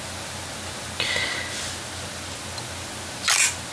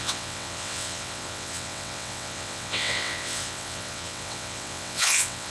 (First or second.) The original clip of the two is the first